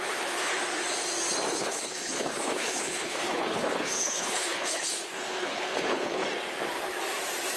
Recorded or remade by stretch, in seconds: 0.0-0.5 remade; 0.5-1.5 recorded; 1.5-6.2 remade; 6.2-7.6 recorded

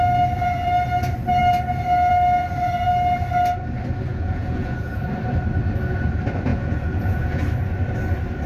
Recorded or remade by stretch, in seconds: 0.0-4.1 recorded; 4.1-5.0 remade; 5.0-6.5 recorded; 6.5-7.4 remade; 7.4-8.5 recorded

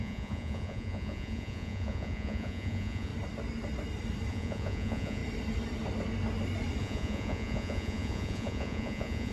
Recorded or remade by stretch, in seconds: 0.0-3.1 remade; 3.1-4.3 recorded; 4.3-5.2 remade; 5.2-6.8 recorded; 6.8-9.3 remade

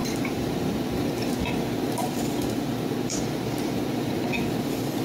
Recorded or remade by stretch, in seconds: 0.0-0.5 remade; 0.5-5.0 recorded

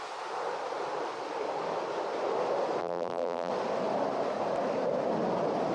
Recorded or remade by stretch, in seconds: 0.0-2.8 recorded; 2.8-3.5 remade; 3.5-5.7 recorded

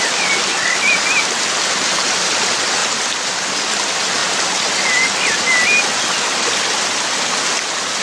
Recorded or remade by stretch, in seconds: 0.0-8.0 recorded

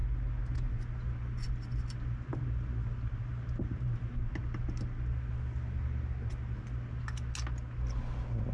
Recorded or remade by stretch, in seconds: 0.0-8.5 recorded